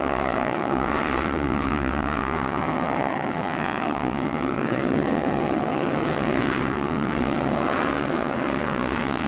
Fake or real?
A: fake